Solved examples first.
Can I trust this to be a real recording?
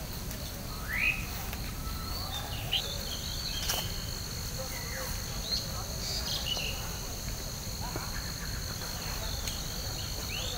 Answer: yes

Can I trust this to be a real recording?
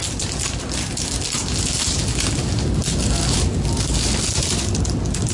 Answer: yes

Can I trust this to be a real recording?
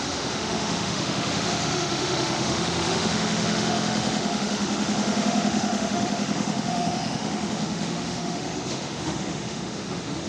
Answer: no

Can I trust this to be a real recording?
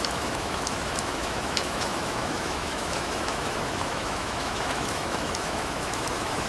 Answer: no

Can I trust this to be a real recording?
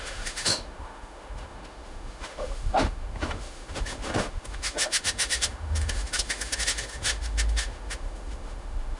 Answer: no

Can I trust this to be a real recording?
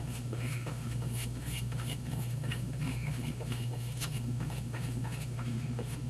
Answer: no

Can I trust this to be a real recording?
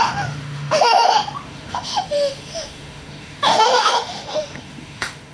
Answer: no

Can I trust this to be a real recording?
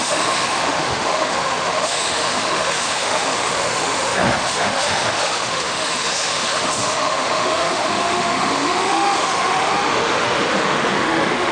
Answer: no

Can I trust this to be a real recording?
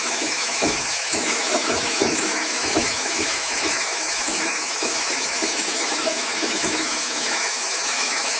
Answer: no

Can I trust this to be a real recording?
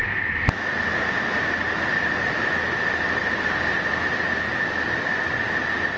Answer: yes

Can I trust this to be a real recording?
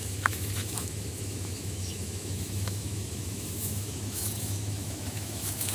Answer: no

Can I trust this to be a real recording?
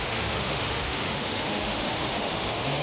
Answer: no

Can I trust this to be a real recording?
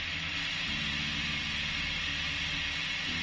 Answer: yes